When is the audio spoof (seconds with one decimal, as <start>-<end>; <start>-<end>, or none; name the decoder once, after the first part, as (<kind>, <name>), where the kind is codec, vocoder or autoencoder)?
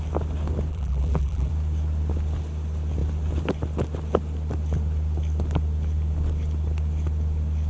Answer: 0.7-1.5 (vocoder, BigVGAN v2)